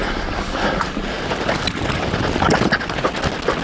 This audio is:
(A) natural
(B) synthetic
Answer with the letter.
A